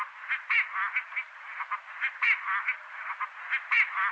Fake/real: real